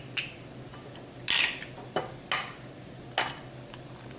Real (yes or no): yes